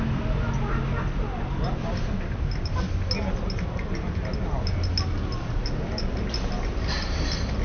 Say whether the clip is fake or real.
real